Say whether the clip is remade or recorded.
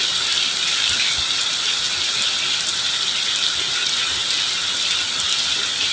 recorded